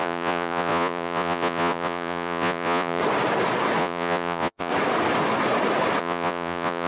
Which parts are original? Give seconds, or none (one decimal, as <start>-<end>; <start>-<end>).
3.0-3.8; 4.7-6.0